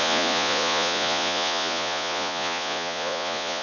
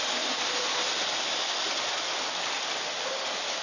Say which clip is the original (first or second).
second